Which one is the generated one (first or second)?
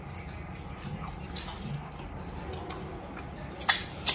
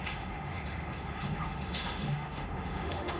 second